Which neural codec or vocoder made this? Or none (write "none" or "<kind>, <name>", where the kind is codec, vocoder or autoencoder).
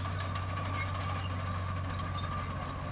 none